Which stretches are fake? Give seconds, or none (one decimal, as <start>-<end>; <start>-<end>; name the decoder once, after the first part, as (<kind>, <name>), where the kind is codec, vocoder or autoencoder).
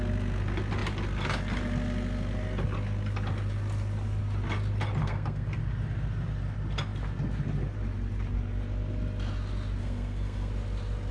5.0-5.6 (codec, SNAC); 9.8-10.5